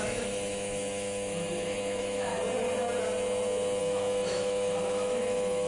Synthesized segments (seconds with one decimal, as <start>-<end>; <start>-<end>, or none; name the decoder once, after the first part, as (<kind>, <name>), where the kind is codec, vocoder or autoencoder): 0.0-2.3 (autoencoder, DAC-VAE); 3.8-5.7